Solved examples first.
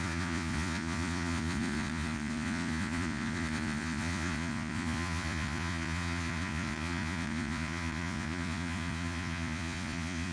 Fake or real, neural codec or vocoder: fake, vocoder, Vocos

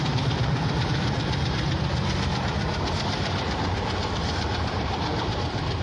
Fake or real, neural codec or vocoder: fake, vocoder, BigVGAN v2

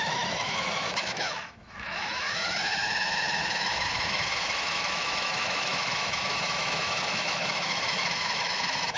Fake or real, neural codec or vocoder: fake, autoencoder, DAC-VAE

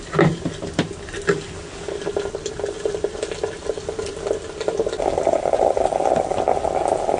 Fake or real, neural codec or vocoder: real